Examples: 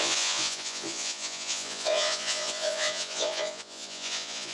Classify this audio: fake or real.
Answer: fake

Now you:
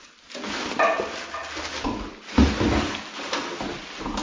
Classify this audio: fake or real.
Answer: real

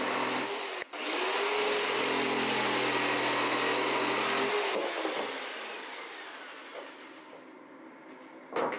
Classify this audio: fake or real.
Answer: real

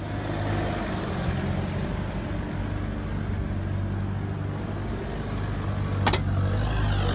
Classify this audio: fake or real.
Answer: real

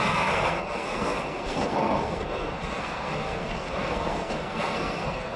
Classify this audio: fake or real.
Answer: fake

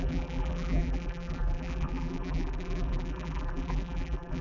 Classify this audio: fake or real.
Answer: fake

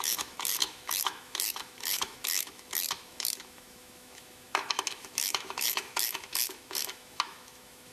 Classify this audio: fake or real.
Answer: fake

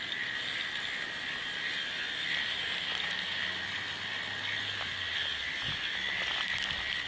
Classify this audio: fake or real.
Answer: real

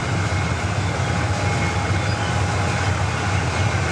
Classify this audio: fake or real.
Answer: real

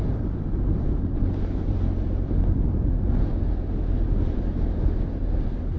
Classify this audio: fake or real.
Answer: real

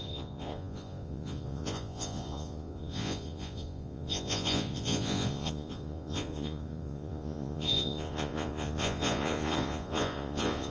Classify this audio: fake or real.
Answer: fake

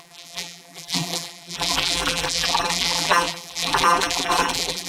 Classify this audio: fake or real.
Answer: fake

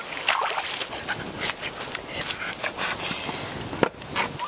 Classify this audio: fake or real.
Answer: real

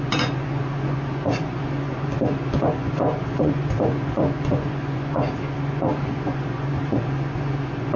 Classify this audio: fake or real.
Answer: fake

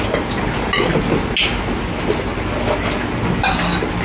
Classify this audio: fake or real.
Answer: real